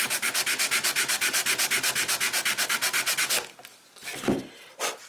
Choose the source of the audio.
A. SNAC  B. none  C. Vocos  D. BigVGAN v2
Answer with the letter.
B